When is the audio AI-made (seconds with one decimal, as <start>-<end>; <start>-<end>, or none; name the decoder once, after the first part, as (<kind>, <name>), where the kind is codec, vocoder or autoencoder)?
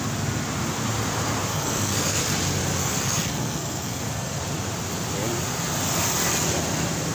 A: 1.5-2.2 (codec, SNAC); 2.8-4.4